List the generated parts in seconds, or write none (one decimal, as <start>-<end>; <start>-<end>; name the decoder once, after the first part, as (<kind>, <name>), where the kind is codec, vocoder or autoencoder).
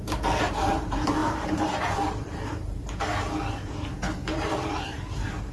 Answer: 0.0-5.5 (vocoder, BigVGAN v2)